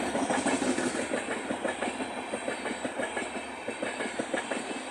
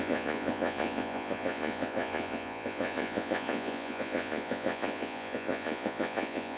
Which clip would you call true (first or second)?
first